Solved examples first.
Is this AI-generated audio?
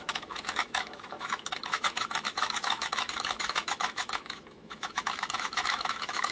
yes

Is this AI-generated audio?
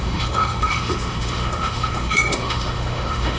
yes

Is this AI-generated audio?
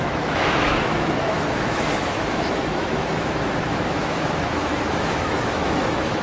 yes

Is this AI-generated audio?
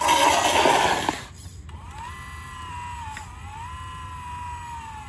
no